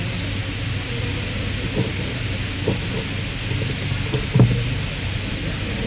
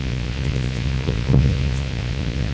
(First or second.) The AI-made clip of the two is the second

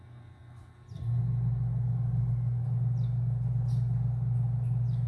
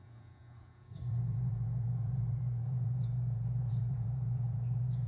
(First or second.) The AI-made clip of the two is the second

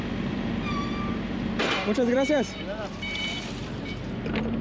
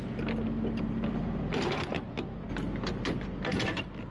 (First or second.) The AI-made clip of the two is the first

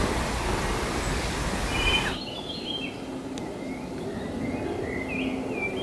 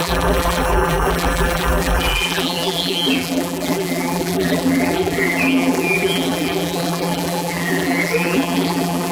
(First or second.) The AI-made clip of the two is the second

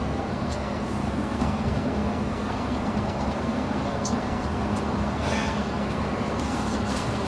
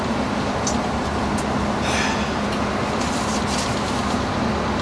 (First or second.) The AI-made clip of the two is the first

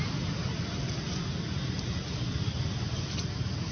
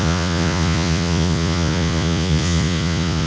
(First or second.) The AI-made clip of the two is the second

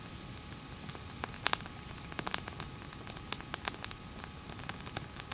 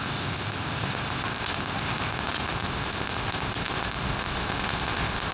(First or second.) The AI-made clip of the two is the second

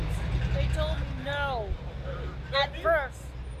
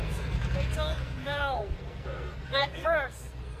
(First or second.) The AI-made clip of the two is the second